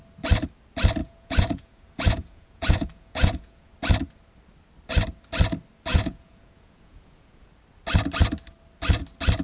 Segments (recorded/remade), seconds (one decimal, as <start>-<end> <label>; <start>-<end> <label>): 0.0-1.0 recorded; 1.0-3.7 remade; 3.7-5.9 recorded; 5.9-7.5 remade; 7.5-9.4 recorded